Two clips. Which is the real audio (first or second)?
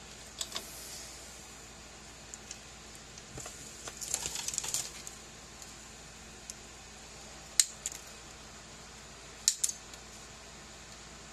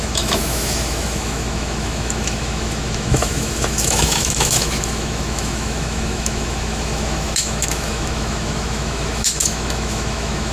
first